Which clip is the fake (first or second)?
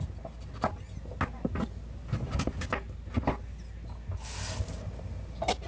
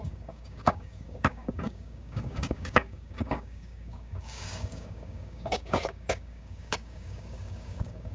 second